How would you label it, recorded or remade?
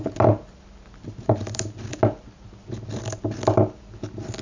recorded